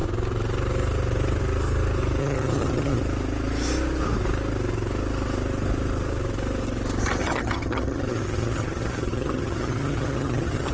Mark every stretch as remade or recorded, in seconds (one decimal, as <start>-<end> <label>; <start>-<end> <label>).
0.0-2.2 recorded; 2.2-3.0 remade; 3.0-7.2 recorded; 7.2-10.7 remade